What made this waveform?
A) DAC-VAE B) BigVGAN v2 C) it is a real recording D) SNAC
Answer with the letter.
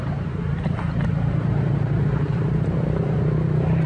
B